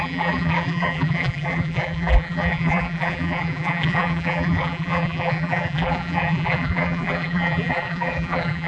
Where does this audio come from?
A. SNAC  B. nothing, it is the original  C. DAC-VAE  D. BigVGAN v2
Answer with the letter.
D